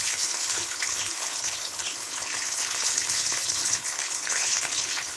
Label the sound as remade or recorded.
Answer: remade